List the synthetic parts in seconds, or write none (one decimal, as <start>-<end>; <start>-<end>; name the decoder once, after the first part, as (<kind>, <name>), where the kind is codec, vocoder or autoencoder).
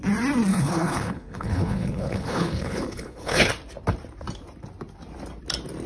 0.5-3.5 (codec, HILCodec)